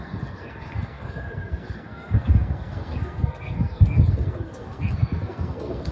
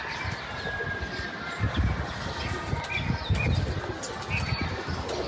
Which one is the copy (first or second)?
first